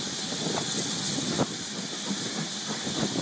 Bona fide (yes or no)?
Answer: yes